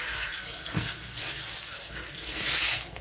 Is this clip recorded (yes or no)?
no